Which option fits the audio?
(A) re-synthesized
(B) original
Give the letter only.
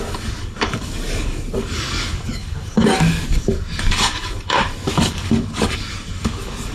A